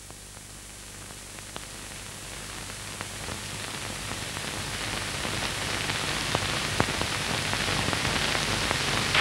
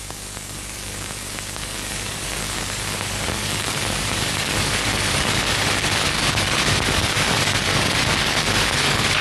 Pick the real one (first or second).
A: first